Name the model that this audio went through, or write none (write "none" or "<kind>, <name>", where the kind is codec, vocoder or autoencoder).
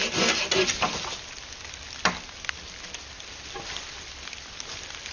none